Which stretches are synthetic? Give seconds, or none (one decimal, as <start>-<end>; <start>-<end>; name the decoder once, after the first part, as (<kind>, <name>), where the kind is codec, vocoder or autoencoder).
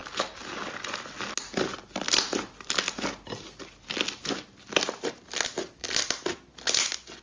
none